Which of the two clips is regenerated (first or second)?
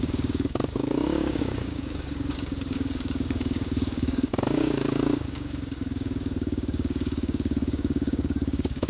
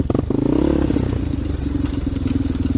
first